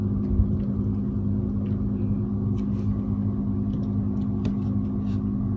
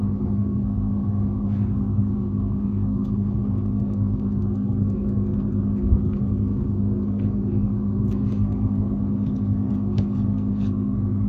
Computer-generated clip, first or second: second